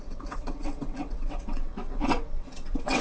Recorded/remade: remade